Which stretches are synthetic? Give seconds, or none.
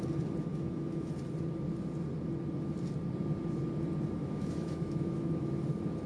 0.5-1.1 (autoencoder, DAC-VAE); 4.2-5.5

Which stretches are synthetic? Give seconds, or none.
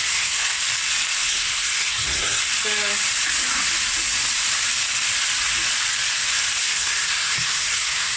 0.0-0.6 (codec, SNAC); 1.3-2.4; 6.6-8.2